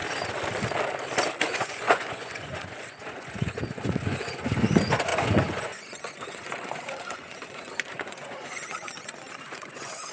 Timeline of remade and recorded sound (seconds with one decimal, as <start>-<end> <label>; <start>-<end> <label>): 0.0-1.4 recorded; 1.4-10.1 remade